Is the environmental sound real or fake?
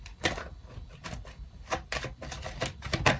real